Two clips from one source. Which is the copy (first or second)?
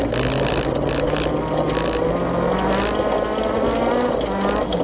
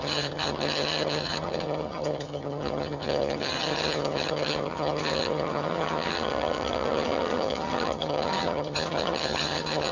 second